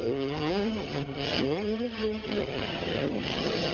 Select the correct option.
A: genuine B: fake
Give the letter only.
B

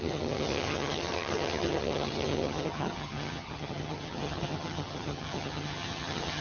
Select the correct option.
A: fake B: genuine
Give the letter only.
A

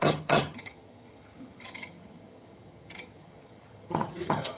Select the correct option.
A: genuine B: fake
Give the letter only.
B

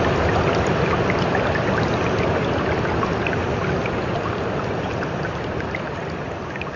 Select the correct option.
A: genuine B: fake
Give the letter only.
A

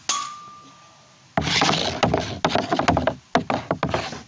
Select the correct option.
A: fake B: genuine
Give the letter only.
B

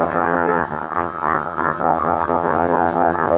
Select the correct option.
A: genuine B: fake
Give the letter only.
B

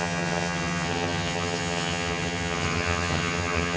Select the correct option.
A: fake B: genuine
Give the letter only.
A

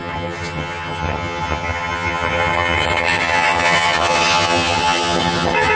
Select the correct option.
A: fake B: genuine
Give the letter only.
A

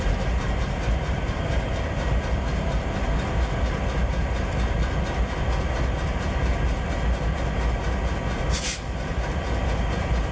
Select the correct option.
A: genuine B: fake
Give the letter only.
A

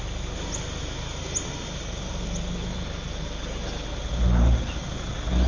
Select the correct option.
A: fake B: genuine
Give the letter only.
B